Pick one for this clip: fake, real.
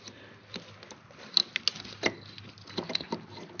real